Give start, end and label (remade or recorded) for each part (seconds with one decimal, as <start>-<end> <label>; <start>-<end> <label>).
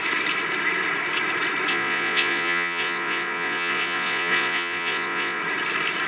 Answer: 0.0-1.7 recorded; 1.7-5.4 remade; 5.4-6.1 recorded